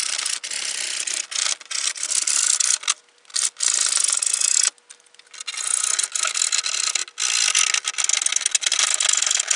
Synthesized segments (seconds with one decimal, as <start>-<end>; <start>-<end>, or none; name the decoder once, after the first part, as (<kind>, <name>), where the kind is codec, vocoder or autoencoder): none